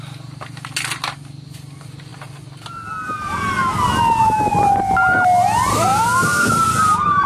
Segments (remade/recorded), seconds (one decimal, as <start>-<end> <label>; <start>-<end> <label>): 0.0-5.7 recorded; 5.7-6.5 remade; 6.5-7.3 recorded